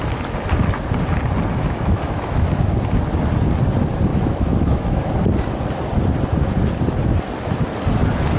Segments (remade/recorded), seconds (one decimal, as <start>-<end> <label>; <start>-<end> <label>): 0.0-1.6 recorded; 1.6-2.4 remade; 2.4-4.1 recorded; 4.1-5.1 remade; 5.1-8.4 recorded